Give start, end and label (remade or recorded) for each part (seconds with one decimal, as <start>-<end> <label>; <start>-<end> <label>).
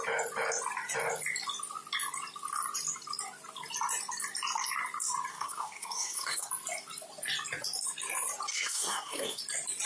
0.0-5.3 recorded; 5.3-6.5 remade; 6.5-8.5 recorded; 8.5-9.4 remade; 9.4-9.9 recorded